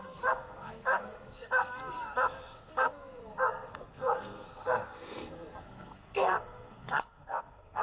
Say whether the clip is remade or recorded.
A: remade